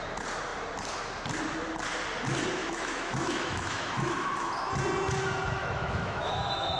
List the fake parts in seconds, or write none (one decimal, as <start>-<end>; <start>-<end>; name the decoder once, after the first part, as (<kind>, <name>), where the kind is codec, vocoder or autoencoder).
2.6-4.5 (autoencoder, DAC-VAE); 5.6-6.8